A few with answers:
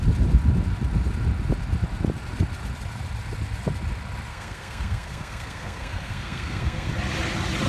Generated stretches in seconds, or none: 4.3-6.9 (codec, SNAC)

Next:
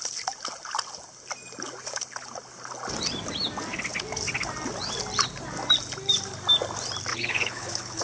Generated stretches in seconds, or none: 7.1-8.0 (codec, HILCodec)